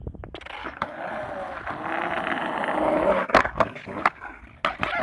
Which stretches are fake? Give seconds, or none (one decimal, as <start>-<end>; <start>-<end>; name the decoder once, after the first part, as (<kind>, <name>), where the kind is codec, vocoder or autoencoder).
0.6-1.1 (codec, DAC); 3.2-4.4

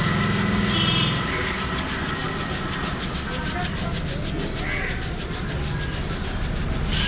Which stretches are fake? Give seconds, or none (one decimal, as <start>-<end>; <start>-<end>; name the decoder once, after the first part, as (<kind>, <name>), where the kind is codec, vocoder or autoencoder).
none

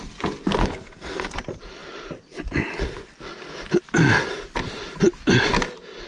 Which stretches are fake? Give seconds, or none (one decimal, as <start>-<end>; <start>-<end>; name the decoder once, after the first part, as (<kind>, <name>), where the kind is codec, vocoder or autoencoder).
0.6-1.3 (codec, SNAC)

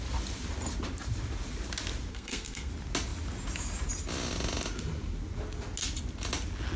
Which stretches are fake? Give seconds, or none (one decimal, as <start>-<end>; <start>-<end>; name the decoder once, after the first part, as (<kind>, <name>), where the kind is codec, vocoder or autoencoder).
2.1-2.7 (codec, SNAC)